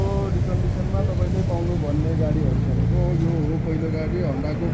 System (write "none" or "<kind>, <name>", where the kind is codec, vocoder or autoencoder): none